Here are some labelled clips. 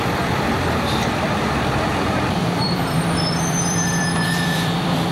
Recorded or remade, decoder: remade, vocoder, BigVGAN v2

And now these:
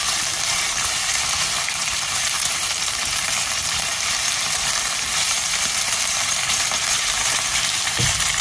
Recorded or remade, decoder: remade, vocoder, BigVGAN v2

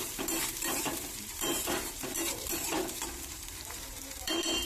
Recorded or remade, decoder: remade, vocoder, BigVGAN v2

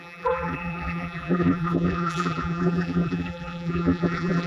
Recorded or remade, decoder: remade, vocoder, BigVGAN v2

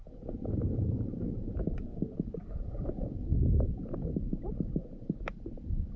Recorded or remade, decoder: remade, vocoder, BigVGAN v2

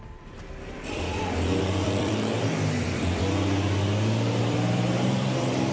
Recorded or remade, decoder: remade, vocoder, BigVGAN v2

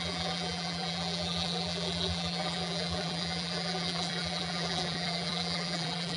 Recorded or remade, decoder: remade, vocoder, BigVGAN v2